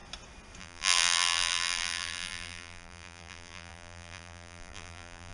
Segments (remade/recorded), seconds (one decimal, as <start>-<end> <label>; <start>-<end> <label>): 0.0-0.6 recorded; 0.6-5.3 remade

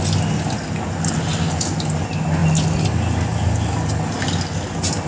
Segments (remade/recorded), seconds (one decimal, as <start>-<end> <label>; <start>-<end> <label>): 0.0-5.1 recorded

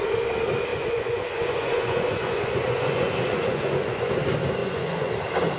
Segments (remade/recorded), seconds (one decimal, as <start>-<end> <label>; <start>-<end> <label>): 0.0-0.7 recorded; 0.7-4.1 remade; 4.1-4.6 recorded; 4.6-5.1 remade; 5.1-5.6 recorded